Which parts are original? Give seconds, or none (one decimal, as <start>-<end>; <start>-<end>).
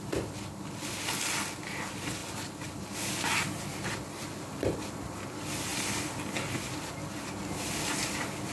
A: 0.0-8.5